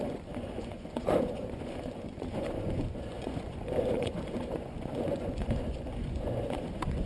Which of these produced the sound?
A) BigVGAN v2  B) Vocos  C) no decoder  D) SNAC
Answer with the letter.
B